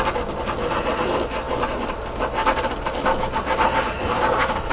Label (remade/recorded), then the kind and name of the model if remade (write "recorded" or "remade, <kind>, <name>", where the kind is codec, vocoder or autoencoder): recorded